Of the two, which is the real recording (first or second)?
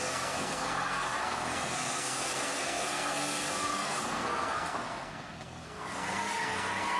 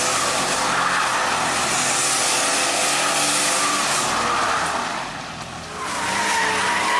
second